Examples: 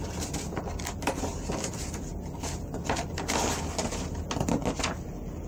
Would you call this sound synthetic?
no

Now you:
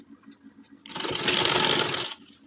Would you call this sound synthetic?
no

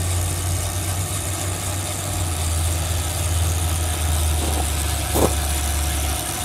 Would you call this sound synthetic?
no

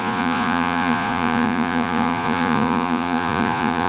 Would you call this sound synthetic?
yes